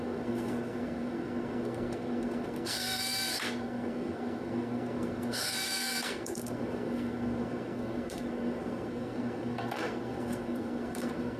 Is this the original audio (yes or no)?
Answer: no